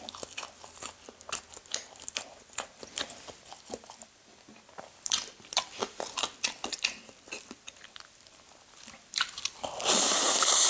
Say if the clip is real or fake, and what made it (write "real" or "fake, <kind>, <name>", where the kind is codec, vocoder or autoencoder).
fake, vocoder, BigVGAN v2